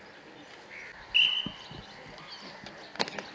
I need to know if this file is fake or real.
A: real